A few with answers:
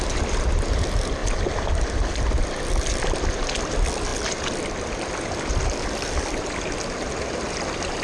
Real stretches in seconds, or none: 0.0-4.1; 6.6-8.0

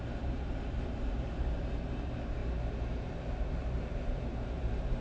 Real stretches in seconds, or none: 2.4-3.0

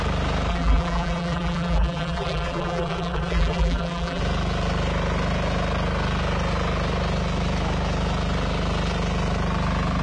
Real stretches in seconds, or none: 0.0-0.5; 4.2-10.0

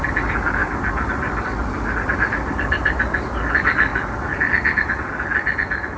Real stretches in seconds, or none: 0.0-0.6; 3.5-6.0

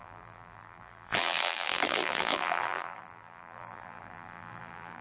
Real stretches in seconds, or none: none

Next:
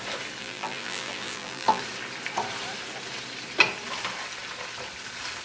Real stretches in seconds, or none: 0.0-0.4; 1.8-5.4